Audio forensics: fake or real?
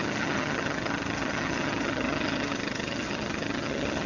fake